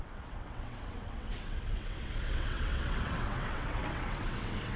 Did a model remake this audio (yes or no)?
yes